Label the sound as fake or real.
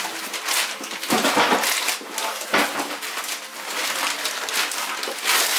real